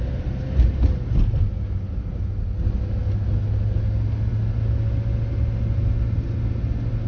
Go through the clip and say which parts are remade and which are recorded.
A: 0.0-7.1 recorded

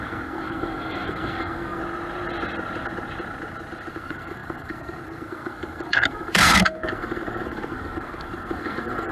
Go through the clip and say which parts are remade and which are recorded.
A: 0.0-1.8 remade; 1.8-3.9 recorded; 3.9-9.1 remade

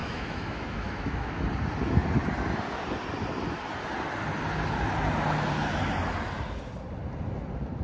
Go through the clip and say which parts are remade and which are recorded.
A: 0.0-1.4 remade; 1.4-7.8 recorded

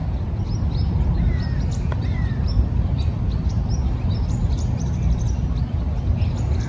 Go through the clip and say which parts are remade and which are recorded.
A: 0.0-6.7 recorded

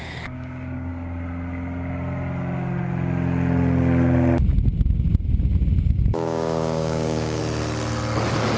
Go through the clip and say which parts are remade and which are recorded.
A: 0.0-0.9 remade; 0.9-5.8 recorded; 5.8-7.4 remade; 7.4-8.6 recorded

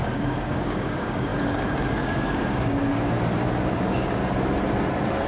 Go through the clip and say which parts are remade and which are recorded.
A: 0.0-2.9 remade; 2.9-3.8 recorded; 3.8-4.2 remade; 4.2-5.3 recorded